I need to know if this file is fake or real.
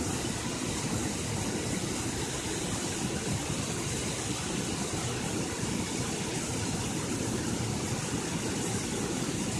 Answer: real